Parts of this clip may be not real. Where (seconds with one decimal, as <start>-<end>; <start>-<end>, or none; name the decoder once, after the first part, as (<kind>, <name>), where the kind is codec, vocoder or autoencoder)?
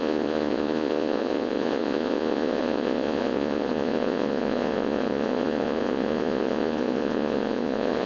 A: 0.0-8.1 (vocoder, Vocos)